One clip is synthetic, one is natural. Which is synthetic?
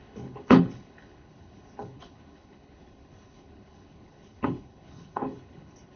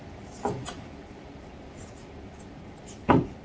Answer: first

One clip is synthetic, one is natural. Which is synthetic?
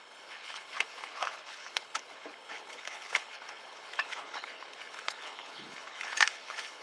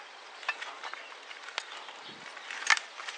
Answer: first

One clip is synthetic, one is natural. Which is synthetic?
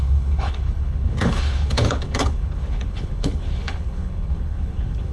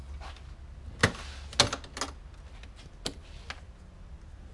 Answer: first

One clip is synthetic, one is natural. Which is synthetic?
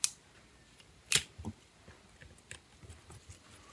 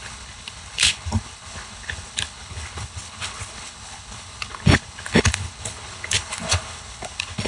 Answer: second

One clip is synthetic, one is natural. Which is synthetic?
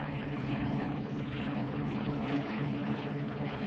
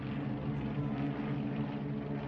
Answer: first